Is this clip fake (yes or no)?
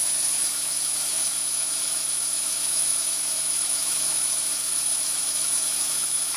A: yes